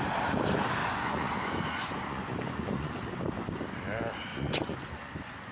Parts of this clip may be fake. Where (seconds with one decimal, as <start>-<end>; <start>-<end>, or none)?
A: 0.8-3.0; 4.3-5.5